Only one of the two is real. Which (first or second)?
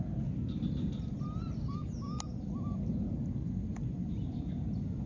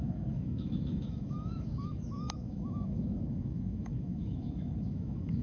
first